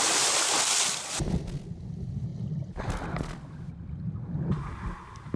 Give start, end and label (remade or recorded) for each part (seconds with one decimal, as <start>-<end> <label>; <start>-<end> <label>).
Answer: 0.0-5.4 recorded

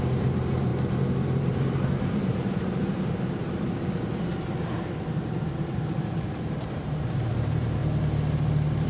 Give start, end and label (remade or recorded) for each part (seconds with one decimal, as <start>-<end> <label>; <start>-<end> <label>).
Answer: 0.0-7.8 remade; 7.8-8.9 recorded

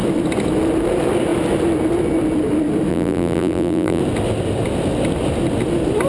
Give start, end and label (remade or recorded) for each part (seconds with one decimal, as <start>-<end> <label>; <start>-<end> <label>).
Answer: 0.0-2.9 recorded; 2.9-4.0 remade; 4.0-6.1 recorded

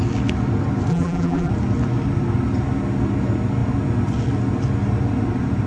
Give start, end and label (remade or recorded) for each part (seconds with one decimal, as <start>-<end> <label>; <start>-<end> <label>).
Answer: 0.0-0.9 recorded; 0.9-1.5 remade; 1.5-5.7 recorded

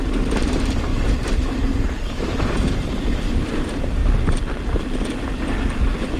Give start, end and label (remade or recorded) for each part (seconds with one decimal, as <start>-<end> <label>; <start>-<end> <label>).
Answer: 0.0-4.0 remade; 4.0-5.2 recorded; 5.2-6.2 remade

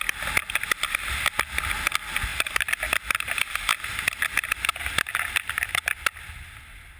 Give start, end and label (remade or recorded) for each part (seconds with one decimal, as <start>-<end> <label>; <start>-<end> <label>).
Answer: 0.0-2.3 recorded; 2.3-2.8 remade; 2.8-7.0 recorded